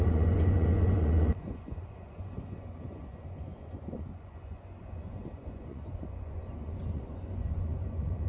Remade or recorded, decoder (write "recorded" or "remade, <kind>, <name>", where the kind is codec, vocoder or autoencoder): remade, vocoder, Vocos